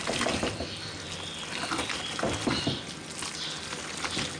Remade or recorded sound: recorded